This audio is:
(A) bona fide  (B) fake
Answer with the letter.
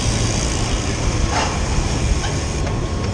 A